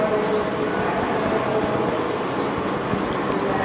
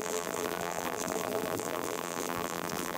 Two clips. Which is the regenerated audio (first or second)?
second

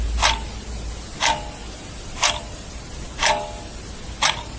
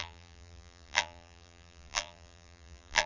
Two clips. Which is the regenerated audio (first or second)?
second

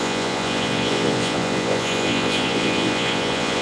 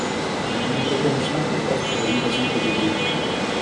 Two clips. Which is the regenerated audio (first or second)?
first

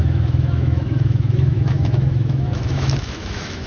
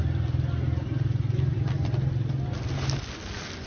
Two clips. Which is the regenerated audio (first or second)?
first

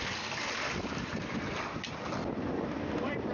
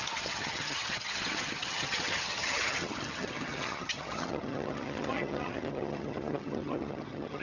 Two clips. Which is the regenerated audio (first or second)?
second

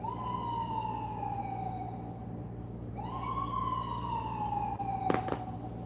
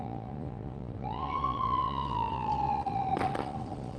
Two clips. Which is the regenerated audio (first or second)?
second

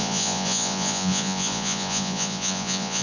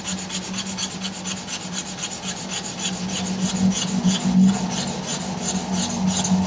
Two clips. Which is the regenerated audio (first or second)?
first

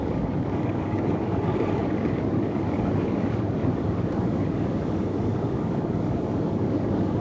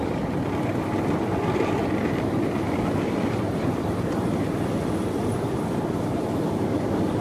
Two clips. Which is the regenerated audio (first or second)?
first